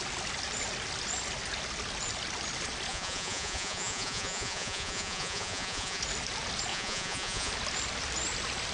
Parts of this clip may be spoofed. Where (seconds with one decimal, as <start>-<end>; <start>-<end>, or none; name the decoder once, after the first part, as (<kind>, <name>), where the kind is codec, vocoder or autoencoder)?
2.9-6.0 (vocoder, Vocos); 6.7-7.5